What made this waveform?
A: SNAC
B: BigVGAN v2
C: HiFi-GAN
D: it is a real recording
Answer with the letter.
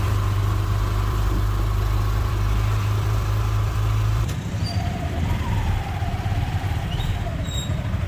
B